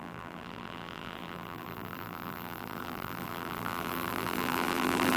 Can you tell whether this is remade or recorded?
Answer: remade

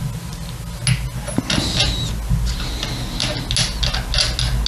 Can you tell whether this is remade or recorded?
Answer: recorded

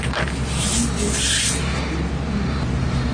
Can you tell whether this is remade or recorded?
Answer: recorded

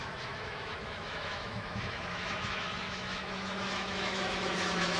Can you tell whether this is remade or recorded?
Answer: remade